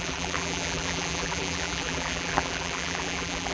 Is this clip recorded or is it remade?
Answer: remade